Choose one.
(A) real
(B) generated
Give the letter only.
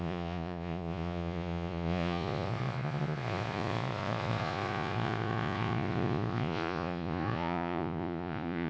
B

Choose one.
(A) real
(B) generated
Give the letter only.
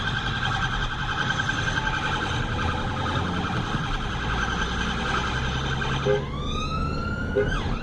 A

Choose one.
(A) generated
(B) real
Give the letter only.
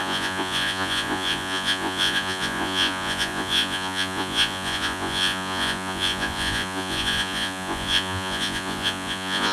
A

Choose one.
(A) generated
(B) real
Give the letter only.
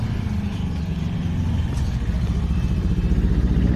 B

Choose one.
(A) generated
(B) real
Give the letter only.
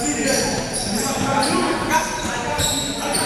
A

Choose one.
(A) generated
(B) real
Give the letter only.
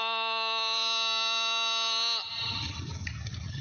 B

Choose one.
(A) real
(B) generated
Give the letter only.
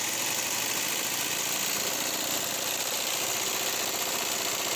A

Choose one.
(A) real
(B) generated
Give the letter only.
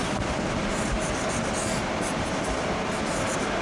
A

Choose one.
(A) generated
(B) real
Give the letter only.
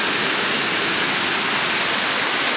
B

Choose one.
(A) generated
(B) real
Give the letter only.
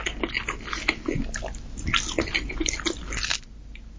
B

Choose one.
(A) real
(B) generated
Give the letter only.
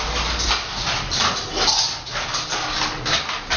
A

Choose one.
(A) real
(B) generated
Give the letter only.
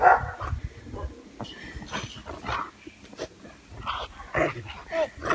A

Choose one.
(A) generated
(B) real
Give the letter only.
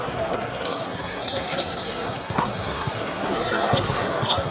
A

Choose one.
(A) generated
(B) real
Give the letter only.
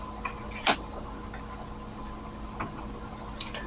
B